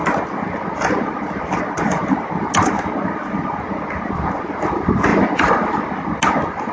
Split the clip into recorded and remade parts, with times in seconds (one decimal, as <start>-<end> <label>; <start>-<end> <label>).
0.0-6.7 recorded